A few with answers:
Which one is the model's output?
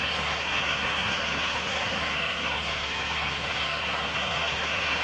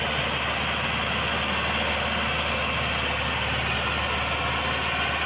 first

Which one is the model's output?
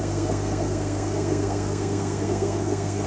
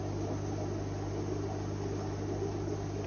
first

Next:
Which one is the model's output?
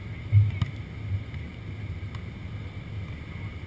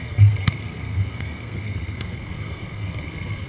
second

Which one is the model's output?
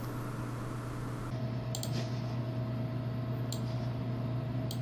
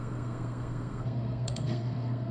second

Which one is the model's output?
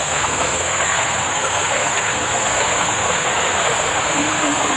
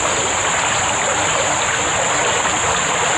first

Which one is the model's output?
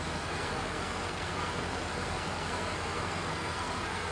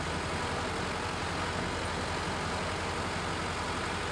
first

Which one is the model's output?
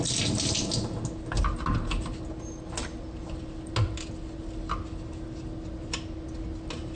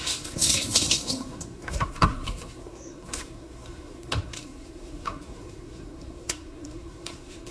second